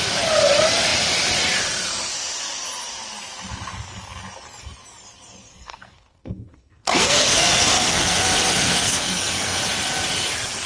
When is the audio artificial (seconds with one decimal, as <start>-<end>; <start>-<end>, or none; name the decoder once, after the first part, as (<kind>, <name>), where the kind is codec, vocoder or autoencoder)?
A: 5.5-9.6 (codec, SNAC)